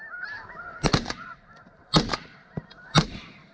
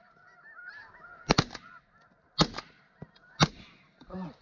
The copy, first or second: first